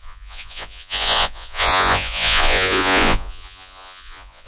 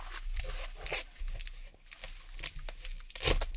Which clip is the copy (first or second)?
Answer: first